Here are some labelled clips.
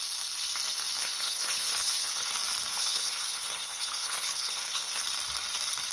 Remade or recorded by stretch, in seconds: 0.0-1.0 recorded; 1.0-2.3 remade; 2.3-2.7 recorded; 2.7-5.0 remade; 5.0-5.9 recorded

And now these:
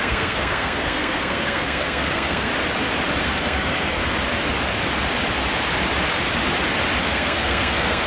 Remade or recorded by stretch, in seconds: 0.0-2.5 remade; 2.5-3.2 recorded; 3.2-4.0 remade; 4.0-7.0 recorded; 7.0-8.1 remade

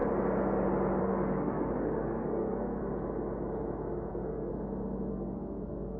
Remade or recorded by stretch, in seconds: 0.0-1.0 recorded; 1.0-2.8 remade; 2.8-4.1 recorded; 4.1-4.5 remade; 4.5-5.1 recorded; 5.1-6.0 remade

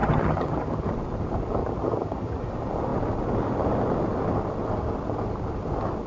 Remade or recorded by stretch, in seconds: 0.0-0.9 remade; 0.9-1.6 recorded; 1.6-2.4 remade; 2.4-6.1 recorded